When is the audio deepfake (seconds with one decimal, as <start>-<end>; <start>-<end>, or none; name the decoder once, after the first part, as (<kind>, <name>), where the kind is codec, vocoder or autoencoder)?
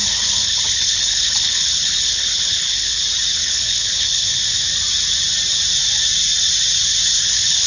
0.0-3.0 (codec, HILCodec); 3.4-4.4; 7.1-7.7